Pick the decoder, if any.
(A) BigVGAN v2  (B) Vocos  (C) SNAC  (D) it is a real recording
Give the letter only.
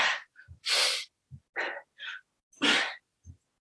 D